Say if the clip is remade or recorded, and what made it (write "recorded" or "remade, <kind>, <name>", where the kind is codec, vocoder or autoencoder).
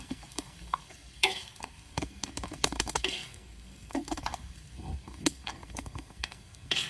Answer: remade, codec, SNAC